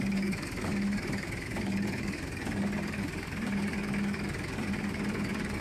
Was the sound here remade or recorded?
remade